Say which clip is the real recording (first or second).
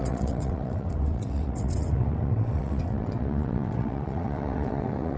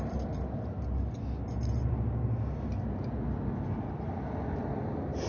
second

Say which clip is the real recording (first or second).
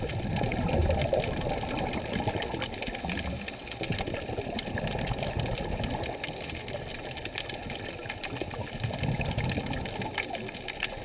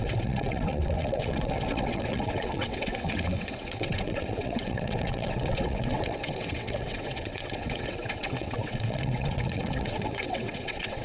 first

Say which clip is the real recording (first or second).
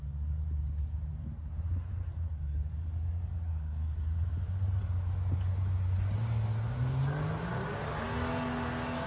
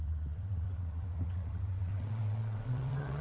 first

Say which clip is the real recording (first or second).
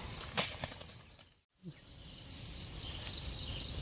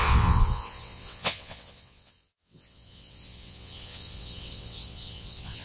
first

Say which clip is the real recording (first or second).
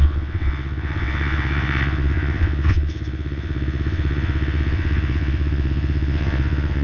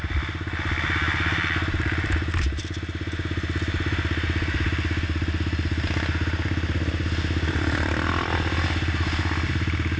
second